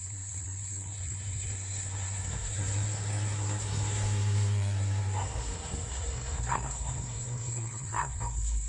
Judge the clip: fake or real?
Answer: fake